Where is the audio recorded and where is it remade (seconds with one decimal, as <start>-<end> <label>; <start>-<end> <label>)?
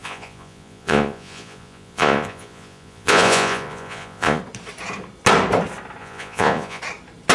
0.0-4.4 remade; 4.4-6.0 recorded; 6.0-6.8 remade; 6.8-7.3 recorded